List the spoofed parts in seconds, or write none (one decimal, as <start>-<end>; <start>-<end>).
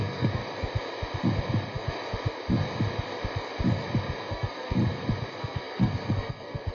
0.0-0.4; 4.3-4.8; 5.4-6.7